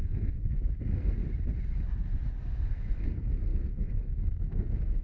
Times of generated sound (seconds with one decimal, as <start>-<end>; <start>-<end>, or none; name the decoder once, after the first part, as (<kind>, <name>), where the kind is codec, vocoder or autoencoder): 0.0-1.2 (codec, SNAC); 2.7-5.0